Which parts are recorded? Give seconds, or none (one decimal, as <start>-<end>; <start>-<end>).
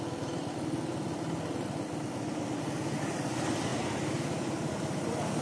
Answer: 0.0-5.4